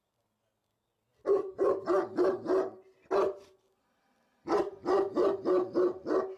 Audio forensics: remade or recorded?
recorded